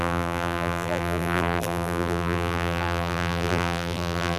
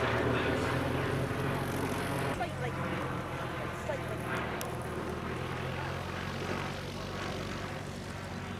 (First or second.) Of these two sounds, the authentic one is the second